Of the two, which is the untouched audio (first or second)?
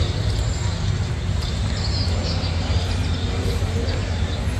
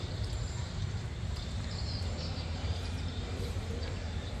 first